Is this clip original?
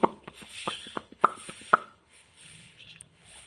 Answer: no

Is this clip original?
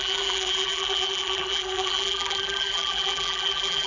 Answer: no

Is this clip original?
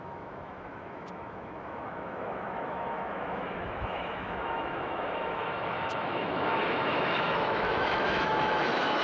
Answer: no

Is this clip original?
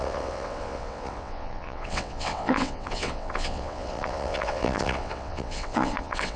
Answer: no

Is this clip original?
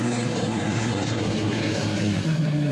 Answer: no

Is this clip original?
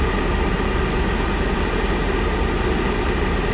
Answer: yes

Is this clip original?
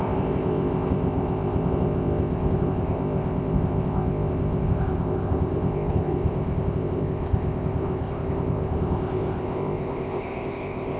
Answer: no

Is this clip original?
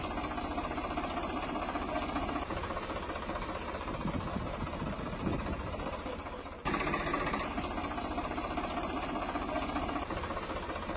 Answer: no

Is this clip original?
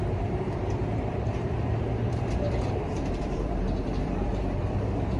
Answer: no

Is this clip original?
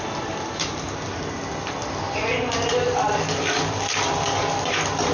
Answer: yes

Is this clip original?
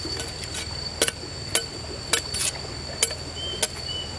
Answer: yes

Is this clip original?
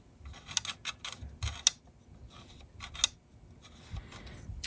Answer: yes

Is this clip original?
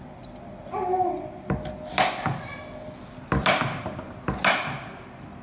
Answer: yes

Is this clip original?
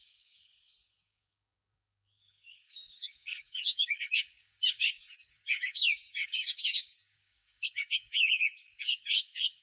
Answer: no